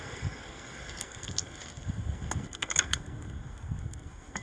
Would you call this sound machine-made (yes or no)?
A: yes